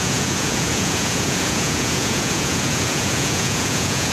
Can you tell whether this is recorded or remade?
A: remade